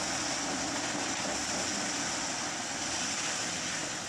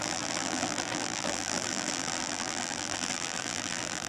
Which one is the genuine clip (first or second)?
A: first